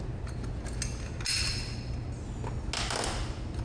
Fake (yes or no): no